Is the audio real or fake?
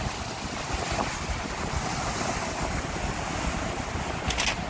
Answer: real